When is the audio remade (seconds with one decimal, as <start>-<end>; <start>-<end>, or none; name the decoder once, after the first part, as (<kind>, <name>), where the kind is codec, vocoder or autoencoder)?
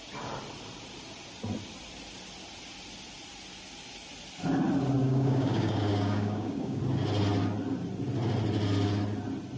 5.0-6.8 (codec, DAC)